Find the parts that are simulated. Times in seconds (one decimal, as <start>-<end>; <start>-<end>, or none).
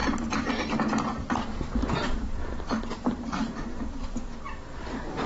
1.1-4.3